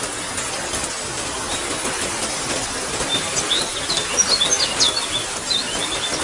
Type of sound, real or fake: real